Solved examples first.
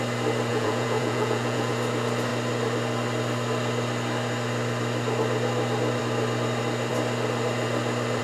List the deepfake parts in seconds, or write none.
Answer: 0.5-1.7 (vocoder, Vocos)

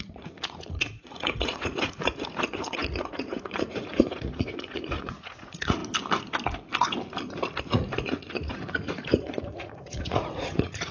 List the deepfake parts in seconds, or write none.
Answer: 0.0-5.8 (vocoder, Vocos); 7.6-10.9

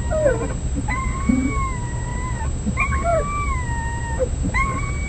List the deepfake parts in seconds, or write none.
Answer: none

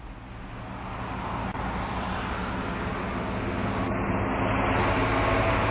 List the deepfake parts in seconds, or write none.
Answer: none

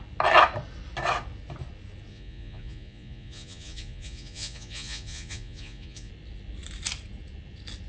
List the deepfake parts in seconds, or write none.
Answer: 2.1-6.1 (vocoder, Vocos)

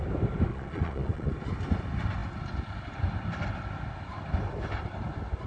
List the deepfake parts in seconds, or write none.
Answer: 0.5-1.3 (vocoder, Vocos)

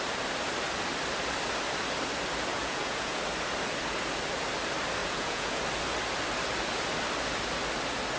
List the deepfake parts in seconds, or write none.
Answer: 2.5-3.2 (vocoder, Vocos); 5.0-5.6

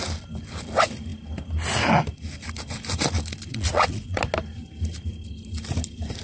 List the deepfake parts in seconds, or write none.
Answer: 3.5-4.2 (vocoder, Vocos)